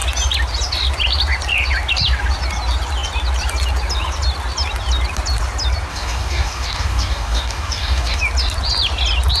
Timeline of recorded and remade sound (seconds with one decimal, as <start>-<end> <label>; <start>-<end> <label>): 0.0-5.9 recorded; 5.9-8.2 remade; 8.2-9.4 recorded